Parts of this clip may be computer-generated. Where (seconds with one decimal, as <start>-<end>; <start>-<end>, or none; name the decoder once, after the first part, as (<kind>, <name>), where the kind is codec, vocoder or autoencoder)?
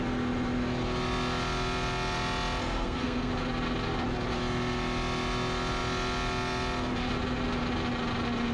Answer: 2.6-3.3 (codec, SNAC)